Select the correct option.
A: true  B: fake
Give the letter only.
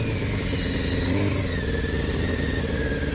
B